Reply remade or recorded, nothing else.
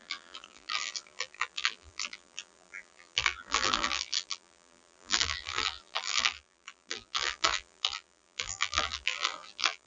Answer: remade